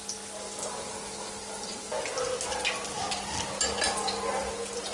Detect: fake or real real